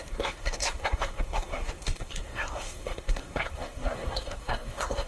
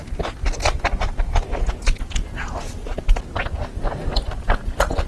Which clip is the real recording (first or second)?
second